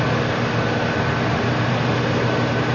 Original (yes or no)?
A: yes